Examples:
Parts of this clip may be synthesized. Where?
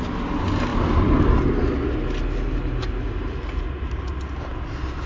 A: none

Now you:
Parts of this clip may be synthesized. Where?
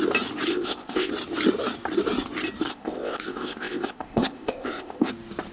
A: 0.5-1.1; 2.7-5.1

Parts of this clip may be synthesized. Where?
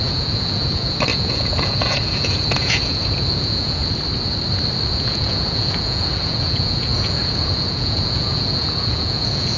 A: 0.0-3.8; 4.9-9.6